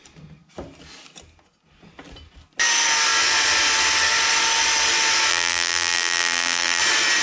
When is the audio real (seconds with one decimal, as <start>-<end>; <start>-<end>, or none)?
0.0-5.3; 6.8-7.2